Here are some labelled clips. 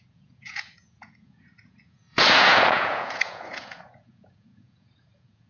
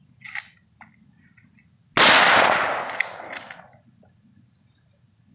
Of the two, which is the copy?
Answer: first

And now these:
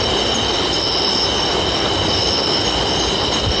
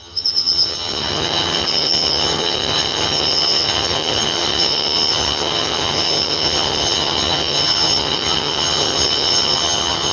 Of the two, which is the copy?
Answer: second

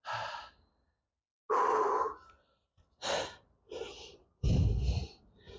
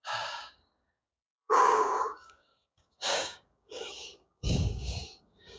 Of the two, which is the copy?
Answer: second